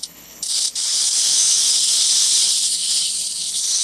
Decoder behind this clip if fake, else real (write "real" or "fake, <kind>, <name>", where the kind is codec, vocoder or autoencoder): fake, codec, HILCodec